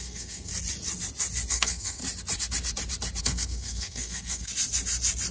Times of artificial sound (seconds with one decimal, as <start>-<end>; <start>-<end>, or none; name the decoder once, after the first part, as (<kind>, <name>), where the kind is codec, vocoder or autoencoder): 0.0-0.5 (codec, SNAC); 1.5-2.0; 3.2-4.5